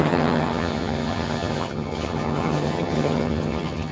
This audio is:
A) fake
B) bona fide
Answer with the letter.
A